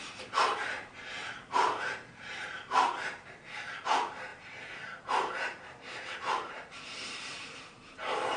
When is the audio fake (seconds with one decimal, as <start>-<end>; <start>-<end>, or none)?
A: 0.7-2.9; 4.3-7.3